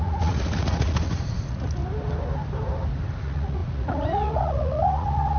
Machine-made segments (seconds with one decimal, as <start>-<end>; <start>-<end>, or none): 0.0-1.8; 3.2-5.4